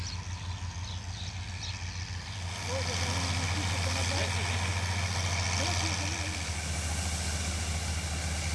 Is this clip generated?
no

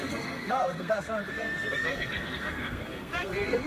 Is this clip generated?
yes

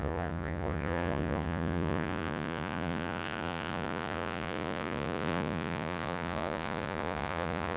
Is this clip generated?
yes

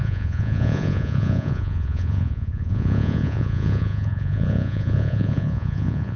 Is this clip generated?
yes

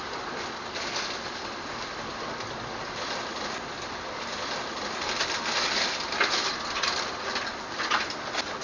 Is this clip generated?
no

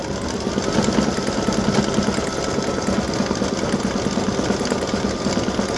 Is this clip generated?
no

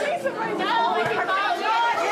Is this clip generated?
no